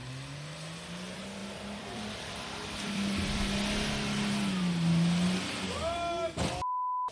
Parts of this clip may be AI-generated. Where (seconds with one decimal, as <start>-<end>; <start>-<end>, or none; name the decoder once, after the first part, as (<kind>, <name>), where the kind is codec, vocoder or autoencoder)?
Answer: 1.4-3.5 (vocoder, BigVGAN v2)